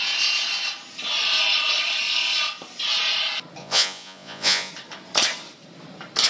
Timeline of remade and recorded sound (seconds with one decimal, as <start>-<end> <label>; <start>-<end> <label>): 0.0-3.6 recorded; 3.6-4.7 remade; 4.7-6.3 recorded